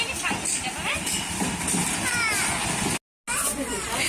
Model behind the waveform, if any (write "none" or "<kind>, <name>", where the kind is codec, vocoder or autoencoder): none